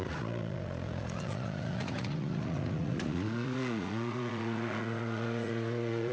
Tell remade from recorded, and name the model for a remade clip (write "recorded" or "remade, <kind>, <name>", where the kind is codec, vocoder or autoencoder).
remade, vocoder, Vocos